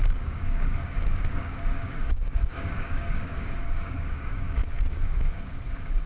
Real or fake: fake